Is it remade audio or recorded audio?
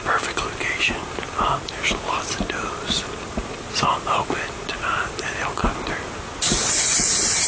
recorded